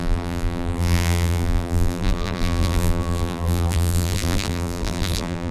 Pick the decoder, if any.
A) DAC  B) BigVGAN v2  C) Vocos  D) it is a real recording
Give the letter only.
B